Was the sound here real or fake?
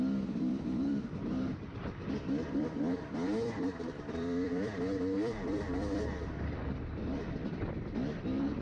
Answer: fake